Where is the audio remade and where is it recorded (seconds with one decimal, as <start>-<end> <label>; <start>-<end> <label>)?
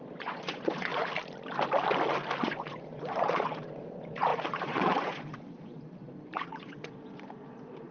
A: 0.0-0.9 remade; 0.9-2.4 recorded; 2.4-7.9 remade